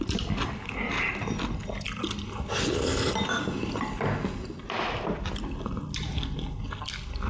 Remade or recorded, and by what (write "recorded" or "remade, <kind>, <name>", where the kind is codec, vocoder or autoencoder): recorded